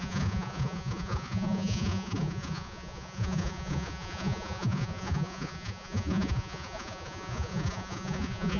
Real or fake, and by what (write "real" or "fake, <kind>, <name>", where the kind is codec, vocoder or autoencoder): fake, vocoder, Vocos